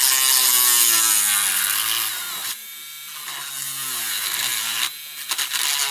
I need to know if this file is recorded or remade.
recorded